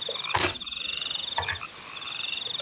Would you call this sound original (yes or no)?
yes